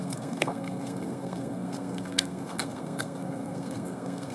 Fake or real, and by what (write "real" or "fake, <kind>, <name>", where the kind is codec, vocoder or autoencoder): fake, codec, SNAC